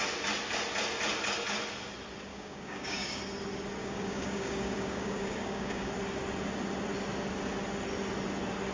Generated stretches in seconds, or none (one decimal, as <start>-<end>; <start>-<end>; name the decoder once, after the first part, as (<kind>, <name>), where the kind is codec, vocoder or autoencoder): 2.3-3.2 (codec, DAC); 3.8-5.9